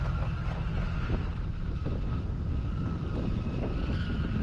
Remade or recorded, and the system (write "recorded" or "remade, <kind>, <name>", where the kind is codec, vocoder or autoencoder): recorded